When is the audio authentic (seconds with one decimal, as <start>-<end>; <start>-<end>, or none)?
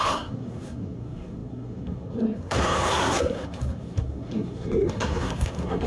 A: none